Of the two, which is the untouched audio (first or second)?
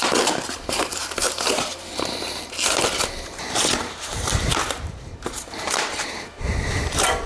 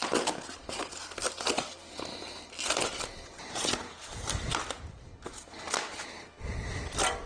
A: second